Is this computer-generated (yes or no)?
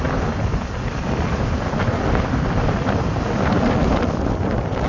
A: no